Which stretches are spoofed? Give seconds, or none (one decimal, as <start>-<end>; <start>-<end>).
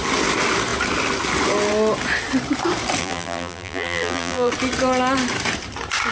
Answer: 3.0-4.5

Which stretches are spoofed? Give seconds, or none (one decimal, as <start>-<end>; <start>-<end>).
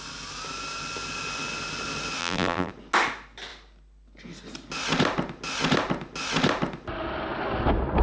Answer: 2.2-2.7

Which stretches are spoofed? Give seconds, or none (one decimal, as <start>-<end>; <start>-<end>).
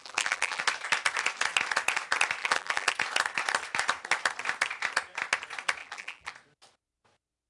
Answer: 0.0-0.6; 2.4-2.9; 5.8-6.3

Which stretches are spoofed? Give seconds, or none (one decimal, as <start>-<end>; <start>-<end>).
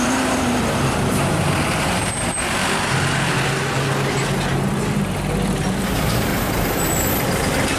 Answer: 0.0-2.6; 5.8-6.3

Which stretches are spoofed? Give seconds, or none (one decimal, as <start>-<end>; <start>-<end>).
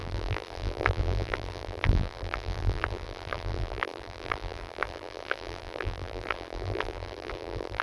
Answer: 0.0-7.8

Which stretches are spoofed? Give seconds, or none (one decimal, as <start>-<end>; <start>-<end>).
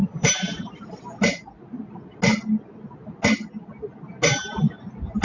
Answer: 0.0-1.0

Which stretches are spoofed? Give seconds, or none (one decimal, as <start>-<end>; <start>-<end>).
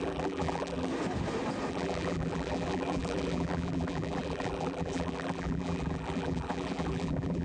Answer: 0.0-0.9; 1.7-7.4